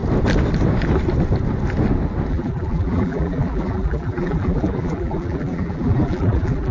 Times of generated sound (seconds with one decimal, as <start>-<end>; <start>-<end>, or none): 2.3-6.7